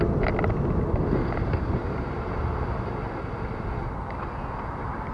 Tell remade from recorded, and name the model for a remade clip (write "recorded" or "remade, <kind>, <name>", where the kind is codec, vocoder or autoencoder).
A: recorded